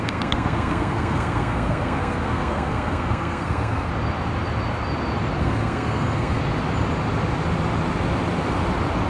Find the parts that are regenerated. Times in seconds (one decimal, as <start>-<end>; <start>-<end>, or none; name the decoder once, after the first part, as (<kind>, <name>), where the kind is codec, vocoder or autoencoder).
0.0-3.9 (codec, SNAC); 5.4-6.4